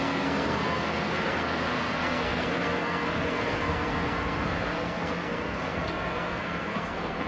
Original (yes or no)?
no